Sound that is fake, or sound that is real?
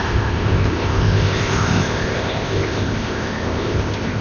fake